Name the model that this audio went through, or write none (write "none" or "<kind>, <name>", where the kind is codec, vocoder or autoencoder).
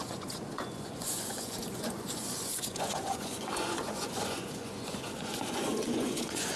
vocoder, Vocos